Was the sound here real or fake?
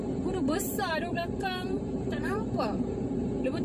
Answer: fake